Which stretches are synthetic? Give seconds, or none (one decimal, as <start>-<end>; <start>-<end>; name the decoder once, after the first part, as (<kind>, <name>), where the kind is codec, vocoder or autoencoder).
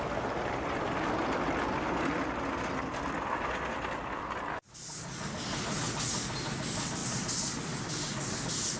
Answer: none